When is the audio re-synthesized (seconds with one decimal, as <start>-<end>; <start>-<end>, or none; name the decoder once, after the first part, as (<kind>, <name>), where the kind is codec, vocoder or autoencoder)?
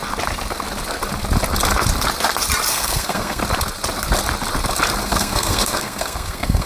2.7-3.4 (codec, SNAC); 5.0-6.7